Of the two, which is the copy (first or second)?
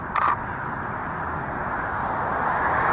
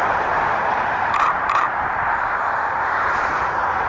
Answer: second